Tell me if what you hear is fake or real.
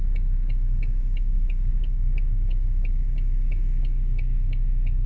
fake